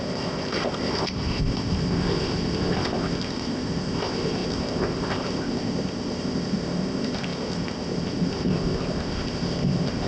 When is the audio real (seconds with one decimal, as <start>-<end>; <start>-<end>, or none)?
none